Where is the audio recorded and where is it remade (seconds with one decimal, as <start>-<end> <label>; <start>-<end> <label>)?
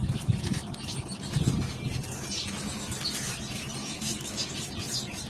0.0-3.8 recorded; 3.8-4.5 remade; 4.5-5.3 recorded